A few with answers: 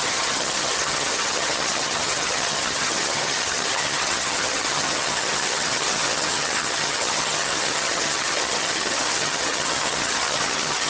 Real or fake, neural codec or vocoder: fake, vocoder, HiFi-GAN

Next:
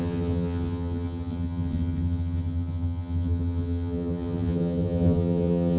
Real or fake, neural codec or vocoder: fake, vocoder, HiFi-GAN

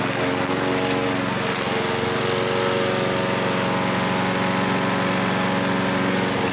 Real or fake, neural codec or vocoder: real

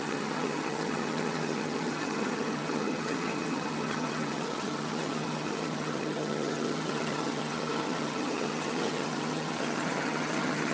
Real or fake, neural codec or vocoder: fake, vocoder, HiFi-GAN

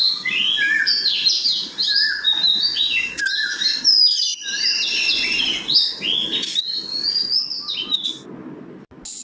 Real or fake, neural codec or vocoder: real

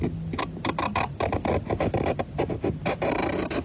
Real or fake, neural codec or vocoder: real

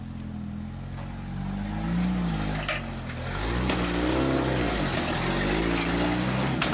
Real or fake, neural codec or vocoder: real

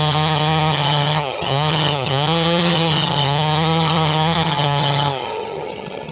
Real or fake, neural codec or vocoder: fake, vocoder, HiFi-GAN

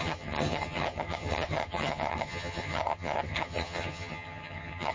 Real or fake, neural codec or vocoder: fake, vocoder, HiFi-GAN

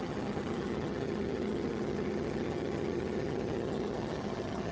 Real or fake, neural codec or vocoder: fake, vocoder, HiFi-GAN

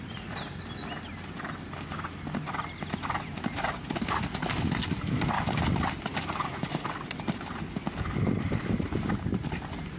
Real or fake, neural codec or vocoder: real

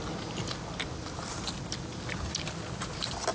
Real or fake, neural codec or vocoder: real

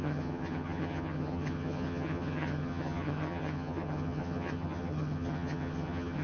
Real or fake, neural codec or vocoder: fake, vocoder, HiFi-GAN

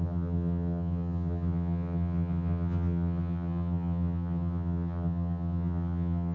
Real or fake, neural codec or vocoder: fake, vocoder, HiFi-GAN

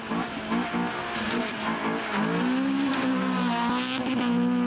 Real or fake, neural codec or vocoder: real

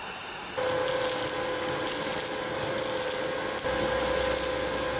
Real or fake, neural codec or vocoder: real